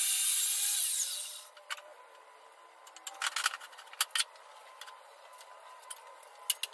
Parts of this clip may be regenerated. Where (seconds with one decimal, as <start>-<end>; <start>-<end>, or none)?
none

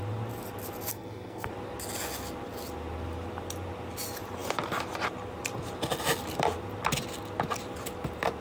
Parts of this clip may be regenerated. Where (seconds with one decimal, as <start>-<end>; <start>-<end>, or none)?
0.9-1.5

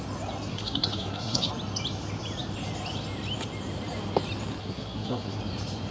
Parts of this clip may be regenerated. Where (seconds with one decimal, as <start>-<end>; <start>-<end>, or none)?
0.5-1.5; 4.6-5.4

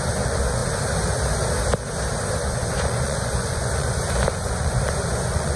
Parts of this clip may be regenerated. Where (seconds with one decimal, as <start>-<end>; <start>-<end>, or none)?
0.0-0.6; 2.4-5.6

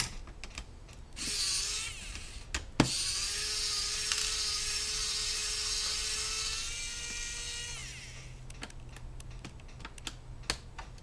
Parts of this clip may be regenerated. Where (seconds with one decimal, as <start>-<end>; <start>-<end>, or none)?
none